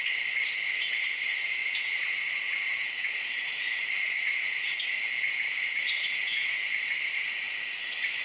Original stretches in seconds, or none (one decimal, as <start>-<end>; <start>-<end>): 1.6-2.4